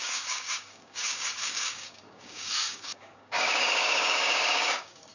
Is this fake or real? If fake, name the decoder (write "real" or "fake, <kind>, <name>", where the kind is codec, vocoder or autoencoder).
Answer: fake, codec, DAC